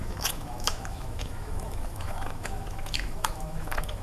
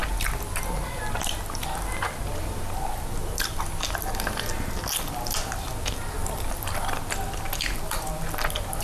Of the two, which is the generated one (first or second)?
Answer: first